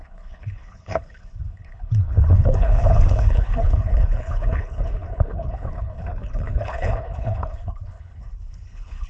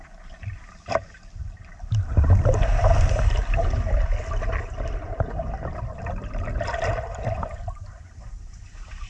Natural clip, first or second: second